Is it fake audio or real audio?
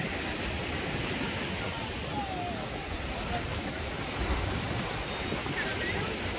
real